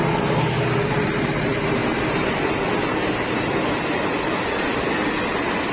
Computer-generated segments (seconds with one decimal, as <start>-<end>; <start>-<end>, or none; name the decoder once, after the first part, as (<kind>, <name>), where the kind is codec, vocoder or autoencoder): none